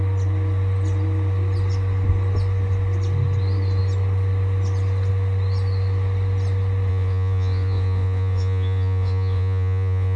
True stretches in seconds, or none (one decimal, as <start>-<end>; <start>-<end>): 0.0-6.9